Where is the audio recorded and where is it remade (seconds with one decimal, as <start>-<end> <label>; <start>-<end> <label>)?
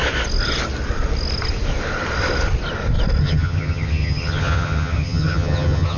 0.0-3.2 recorded; 3.2-6.0 remade